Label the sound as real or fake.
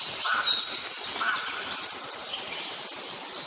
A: real